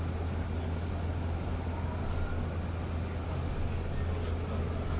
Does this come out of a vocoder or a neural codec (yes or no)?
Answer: no